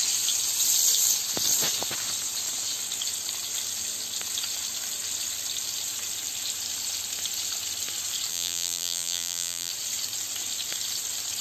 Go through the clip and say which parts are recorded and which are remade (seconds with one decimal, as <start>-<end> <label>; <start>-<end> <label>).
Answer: 0.0-8.3 recorded; 8.3-9.7 remade; 9.7-11.4 recorded